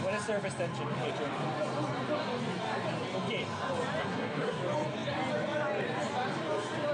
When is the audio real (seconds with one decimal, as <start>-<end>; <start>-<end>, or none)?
0.0-4.0; 4.6-6.9